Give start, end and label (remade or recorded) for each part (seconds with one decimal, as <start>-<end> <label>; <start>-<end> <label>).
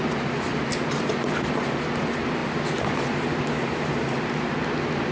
0.0-5.1 recorded